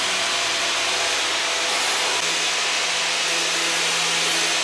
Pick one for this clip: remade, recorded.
recorded